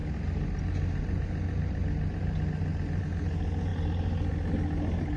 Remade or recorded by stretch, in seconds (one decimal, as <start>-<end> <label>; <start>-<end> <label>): 0.0-5.2 recorded